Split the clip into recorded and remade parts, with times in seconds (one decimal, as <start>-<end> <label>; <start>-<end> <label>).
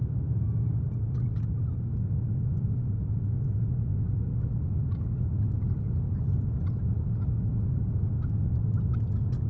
0.0-9.5 recorded